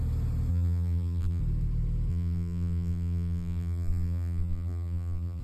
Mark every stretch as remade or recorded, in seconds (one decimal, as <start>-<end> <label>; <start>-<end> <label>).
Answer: 0.0-0.5 recorded; 0.5-1.4 remade; 1.4-2.1 recorded; 2.1-5.4 remade